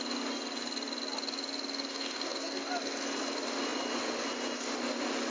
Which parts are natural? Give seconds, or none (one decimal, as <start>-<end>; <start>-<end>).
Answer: 0.0-1.9; 2.7-5.3